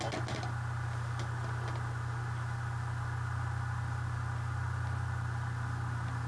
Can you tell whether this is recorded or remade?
recorded